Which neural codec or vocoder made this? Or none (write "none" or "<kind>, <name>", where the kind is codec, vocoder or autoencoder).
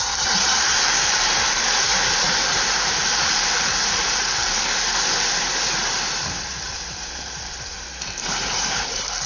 vocoder, BigVGAN v2